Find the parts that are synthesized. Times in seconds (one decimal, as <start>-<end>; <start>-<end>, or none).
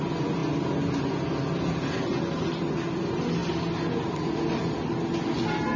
none